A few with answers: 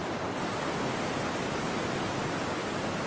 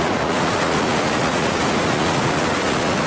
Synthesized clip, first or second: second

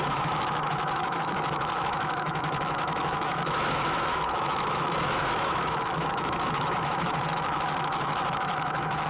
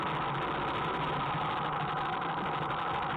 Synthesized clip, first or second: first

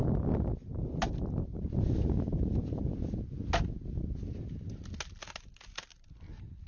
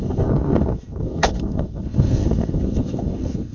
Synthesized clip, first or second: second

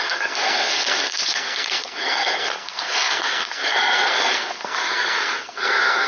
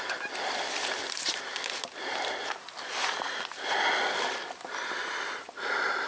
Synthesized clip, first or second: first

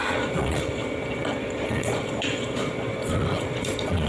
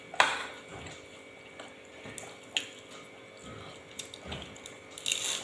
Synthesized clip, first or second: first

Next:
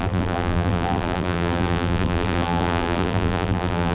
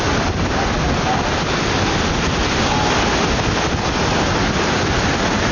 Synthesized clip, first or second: first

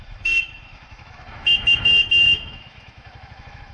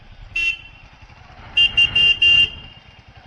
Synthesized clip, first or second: first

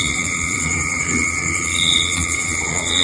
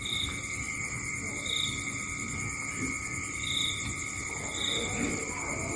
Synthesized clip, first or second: first